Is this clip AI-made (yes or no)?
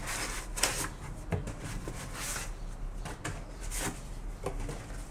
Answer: no